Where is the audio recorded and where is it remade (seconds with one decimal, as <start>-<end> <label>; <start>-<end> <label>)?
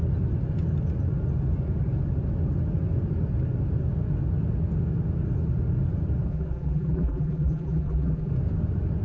0.0-6.3 recorded; 6.3-8.3 remade; 8.3-9.0 recorded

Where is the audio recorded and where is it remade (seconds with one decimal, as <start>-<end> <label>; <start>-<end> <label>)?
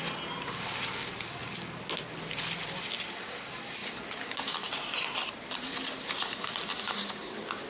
0.0-3.8 recorded; 3.8-7.7 remade